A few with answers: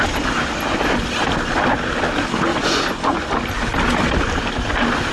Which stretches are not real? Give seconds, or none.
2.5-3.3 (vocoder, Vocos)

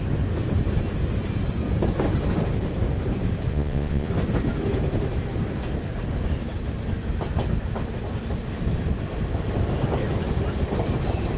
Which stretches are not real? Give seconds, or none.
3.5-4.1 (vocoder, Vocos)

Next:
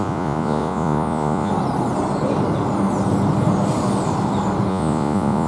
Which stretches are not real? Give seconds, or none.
0.0-1.5 (vocoder, Vocos); 4.7-5.5

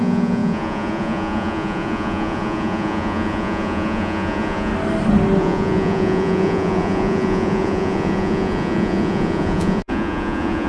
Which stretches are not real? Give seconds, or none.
0.0-4.7 (vocoder, Vocos); 5.4-10.7